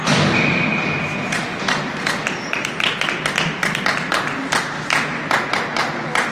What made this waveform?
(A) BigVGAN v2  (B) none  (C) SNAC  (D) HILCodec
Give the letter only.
B